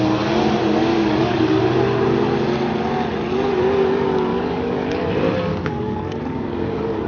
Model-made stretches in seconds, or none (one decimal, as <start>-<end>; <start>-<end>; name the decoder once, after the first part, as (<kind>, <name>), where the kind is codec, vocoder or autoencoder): 0.9-1.6 (codec, DAC); 4.3-5.1; 5.5-7.1